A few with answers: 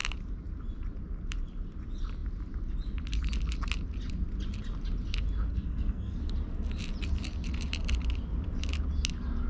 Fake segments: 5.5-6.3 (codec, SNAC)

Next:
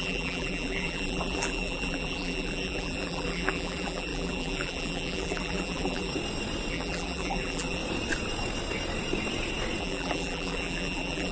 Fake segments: 0.0-6.1 (vocoder, BigVGAN v2); 6.7-7.8; 9.8-11.3

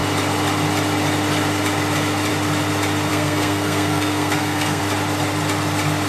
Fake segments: 3.1-4.8 (codec, SNAC)